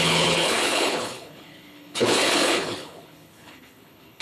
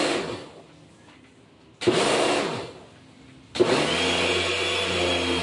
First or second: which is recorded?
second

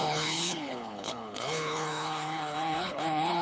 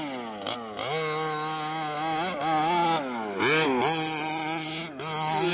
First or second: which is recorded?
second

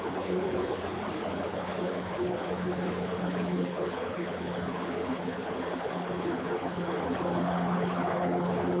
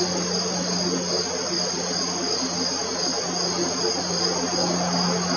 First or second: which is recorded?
second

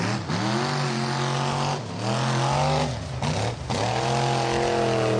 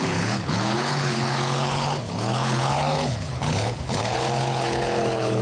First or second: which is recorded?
first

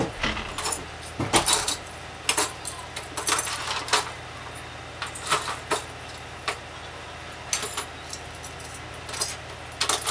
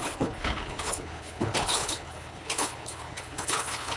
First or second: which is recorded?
first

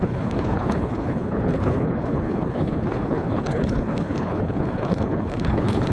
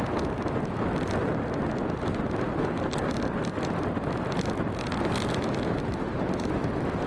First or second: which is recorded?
second